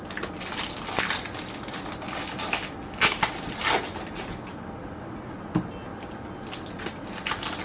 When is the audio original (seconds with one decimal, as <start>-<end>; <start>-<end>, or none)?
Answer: 0.0-7.6